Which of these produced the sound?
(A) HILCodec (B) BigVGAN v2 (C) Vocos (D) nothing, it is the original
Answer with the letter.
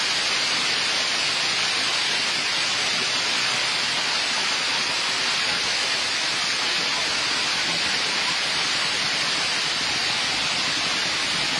D